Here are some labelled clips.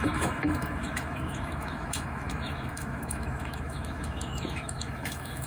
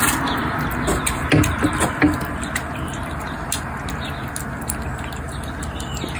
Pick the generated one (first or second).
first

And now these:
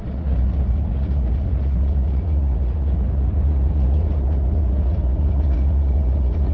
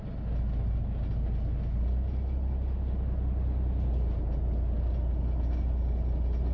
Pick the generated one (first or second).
first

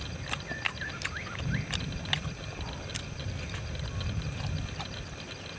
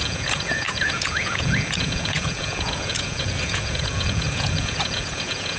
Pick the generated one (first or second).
second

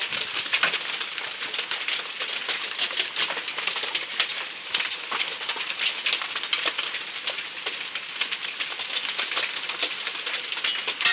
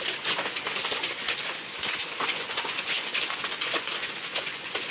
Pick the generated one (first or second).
second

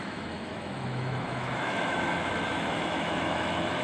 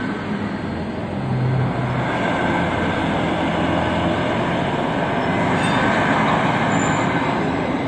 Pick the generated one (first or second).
first